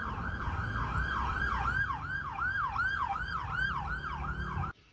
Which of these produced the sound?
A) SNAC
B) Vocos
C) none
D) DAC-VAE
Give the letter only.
C